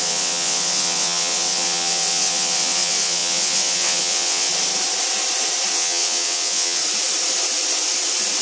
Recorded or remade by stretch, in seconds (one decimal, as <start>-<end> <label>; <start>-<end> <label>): 0.0-4.5 remade; 4.5-5.7 recorded; 5.7-6.8 remade; 6.8-8.4 recorded